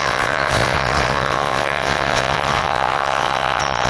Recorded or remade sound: remade